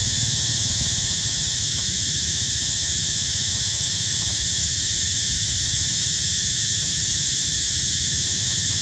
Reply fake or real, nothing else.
fake